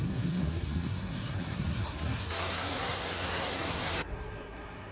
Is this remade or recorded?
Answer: remade